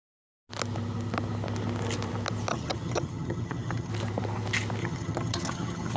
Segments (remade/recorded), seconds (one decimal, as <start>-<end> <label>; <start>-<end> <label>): 0.0-2.5 recorded; 2.5-3.9 remade; 3.9-4.8 recorded; 4.8-6.0 remade